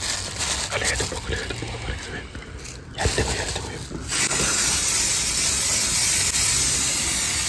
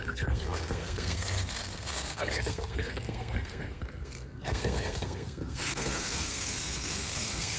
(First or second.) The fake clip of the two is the second